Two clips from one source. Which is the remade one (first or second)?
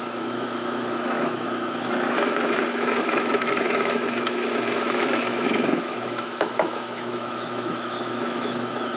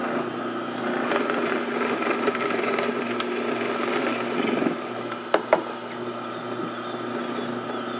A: first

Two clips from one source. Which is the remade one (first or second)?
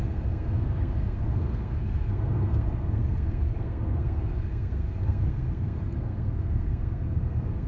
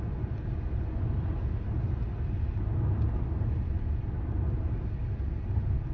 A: first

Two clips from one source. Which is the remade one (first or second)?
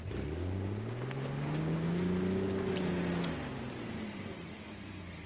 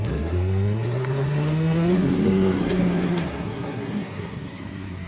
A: second